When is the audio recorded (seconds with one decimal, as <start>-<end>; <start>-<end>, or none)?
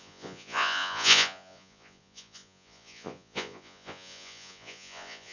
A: none